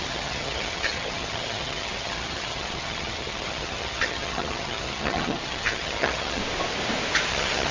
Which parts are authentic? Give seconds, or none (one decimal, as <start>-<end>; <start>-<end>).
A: 6.4-7.3